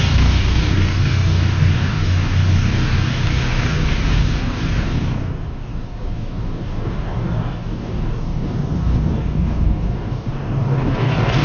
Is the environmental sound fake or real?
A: fake